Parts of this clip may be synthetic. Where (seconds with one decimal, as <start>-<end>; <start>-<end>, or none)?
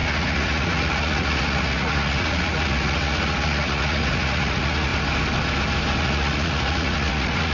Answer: 0.0-4.9; 6.0-7.5